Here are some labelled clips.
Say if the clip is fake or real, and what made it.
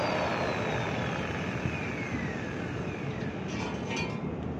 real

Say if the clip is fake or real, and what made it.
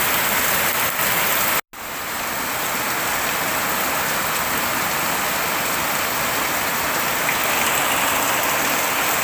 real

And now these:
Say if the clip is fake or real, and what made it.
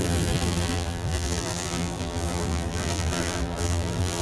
fake, vocoder, BigVGAN v2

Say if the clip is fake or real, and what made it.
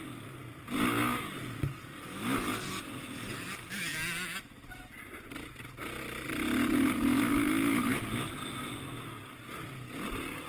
real